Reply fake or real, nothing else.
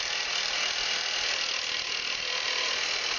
real